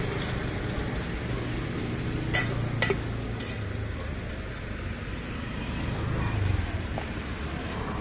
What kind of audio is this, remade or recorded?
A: recorded